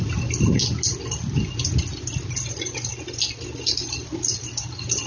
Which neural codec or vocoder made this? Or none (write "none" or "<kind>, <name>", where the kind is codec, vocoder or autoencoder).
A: none